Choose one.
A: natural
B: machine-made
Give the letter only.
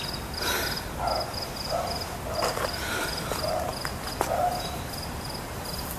A